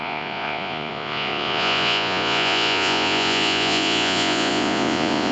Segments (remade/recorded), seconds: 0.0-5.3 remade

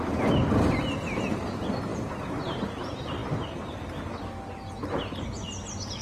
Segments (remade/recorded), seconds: 0.0-6.0 recorded